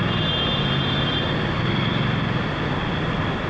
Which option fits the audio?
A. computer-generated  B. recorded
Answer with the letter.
B